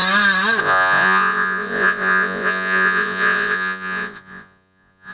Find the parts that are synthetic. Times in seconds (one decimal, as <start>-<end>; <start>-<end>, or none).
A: 0.6-5.1